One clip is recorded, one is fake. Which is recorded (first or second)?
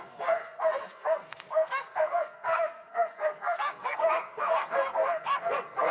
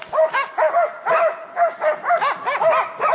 second